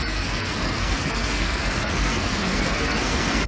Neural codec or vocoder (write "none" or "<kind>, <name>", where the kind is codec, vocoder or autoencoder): codec, SNAC